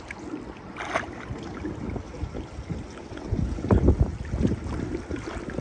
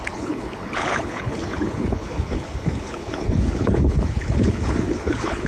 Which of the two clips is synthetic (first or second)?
second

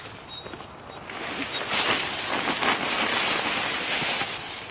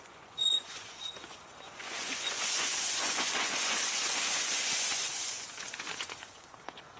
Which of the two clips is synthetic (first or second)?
second